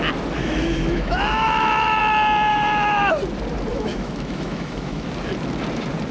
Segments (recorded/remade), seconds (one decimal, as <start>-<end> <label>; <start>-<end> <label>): 0.0-0.4 recorded; 0.4-2.0 remade; 2.0-2.5 recorded; 2.5-3.1 remade; 3.1-3.7 recorded; 3.7-5.1 remade; 5.1-6.1 recorded